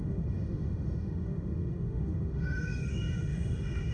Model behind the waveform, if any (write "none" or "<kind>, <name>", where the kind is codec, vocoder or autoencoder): autoencoder, DAC-VAE